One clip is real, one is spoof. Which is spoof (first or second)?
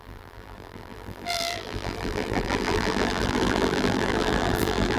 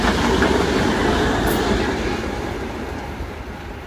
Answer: first